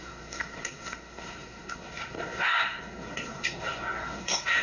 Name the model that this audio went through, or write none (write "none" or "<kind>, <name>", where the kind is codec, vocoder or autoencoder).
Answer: codec, SNAC